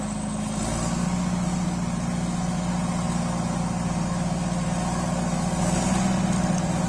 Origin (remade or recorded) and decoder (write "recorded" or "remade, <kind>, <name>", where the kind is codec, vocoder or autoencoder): recorded